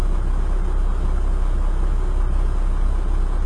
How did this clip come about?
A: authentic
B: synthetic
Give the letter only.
A